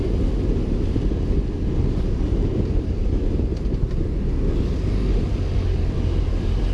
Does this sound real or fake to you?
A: real